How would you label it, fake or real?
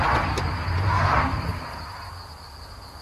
real